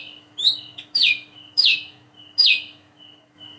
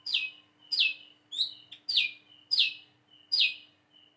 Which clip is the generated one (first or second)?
first